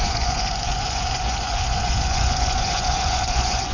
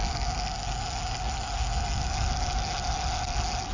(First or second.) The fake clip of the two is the first